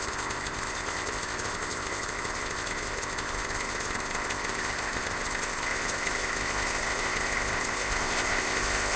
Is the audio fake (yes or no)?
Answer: yes